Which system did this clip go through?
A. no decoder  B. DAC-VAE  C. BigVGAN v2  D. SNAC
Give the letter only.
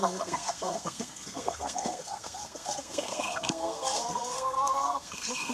D